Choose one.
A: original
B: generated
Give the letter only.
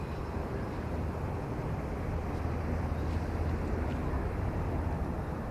A